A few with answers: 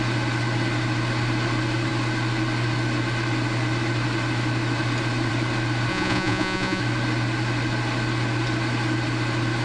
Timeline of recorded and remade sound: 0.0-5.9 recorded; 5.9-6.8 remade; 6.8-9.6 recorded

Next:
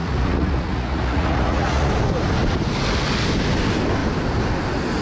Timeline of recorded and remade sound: 0.0-1.9 remade; 1.9-5.0 recorded

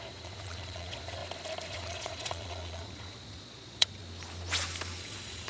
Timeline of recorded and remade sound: 0.0-1.2 remade; 1.2-1.7 recorded; 1.7-4.0 remade; 4.0-5.0 recorded; 5.0-5.5 remade

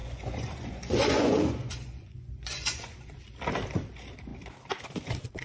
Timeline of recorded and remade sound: 0.0-3.2 remade; 3.2-5.4 recorded

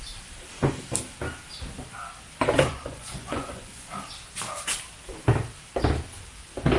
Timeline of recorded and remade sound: 0.0-2.7 recorded; 2.7-3.9 remade; 3.9-6.8 recorded

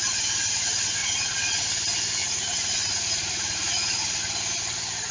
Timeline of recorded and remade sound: 0.0-1.0 recorded; 1.0-1.6 remade; 1.6-2.2 recorded; 2.2-4.2 remade; 4.2-5.1 recorded